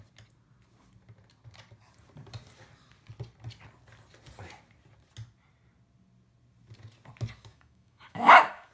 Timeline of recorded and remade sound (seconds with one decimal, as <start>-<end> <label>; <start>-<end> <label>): 0.0-7.5 recorded; 7.5-8.7 remade